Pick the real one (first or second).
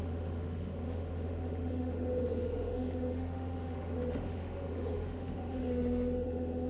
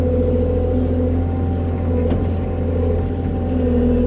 second